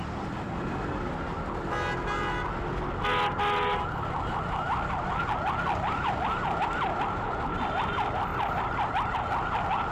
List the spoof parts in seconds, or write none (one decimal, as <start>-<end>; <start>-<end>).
8.3-9.1